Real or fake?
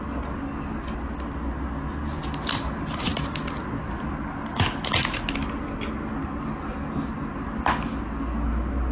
real